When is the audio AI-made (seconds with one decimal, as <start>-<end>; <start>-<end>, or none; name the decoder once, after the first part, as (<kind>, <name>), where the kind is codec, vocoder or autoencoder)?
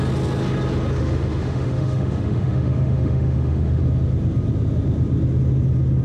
1.0-3.8 (autoencoder, DAC-VAE)